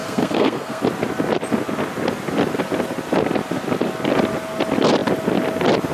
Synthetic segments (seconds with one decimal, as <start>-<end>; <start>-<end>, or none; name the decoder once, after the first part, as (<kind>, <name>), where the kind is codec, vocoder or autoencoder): 0.0-0.8 (codec, SNAC)